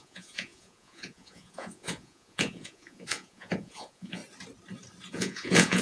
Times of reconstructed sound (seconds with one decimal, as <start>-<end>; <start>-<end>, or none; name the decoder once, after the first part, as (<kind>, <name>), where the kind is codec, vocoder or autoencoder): 0.0-4.2 (vocoder, Vocos); 5.1-5.8